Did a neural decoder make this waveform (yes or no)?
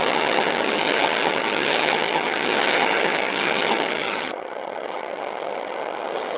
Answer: yes